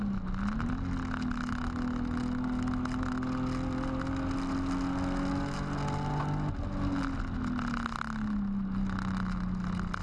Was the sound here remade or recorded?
recorded